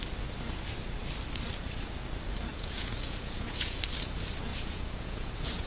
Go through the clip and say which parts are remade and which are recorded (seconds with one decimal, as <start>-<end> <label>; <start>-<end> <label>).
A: 0.0-2.5 recorded; 2.5-3.8 remade; 3.8-4.5 recorded; 4.5-5.7 remade